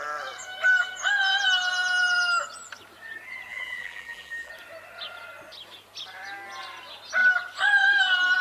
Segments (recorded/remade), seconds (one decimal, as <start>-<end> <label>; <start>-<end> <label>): 0.0-3.5 recorded; 3.5-4.5 remade; 4.5-8.4 recorded